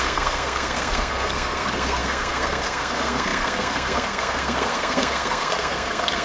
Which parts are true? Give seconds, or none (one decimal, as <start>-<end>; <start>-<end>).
none